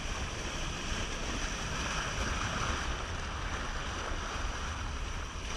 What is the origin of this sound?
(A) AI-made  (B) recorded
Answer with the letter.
B